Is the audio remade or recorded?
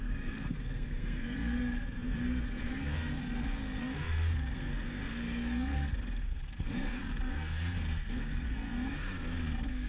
remade